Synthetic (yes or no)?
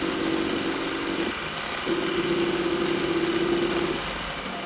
no